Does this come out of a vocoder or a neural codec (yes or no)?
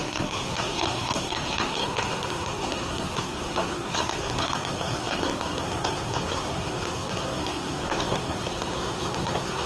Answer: yes